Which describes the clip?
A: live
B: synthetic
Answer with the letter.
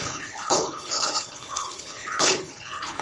B